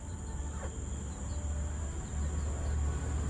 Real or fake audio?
real